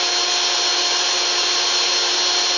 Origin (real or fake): real